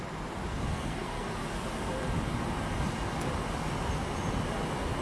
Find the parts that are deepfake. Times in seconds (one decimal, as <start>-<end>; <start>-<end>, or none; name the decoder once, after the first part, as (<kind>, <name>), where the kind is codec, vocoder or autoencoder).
0.5-1.3 (codec, SNAC)